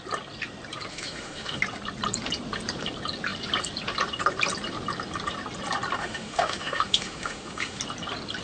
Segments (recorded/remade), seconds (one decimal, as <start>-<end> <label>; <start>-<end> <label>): 0.0-0.9 recorded; 0.9-1.6 remade; 1.6-6.0 recorded; 6.0-7.8 remade; 7.8-8.4 recorded